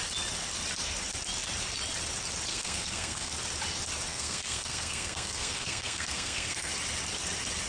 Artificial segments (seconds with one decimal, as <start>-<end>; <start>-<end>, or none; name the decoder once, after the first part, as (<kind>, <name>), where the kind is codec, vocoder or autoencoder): 2.5-3.3 (codec, SNAC); 4.1-6.7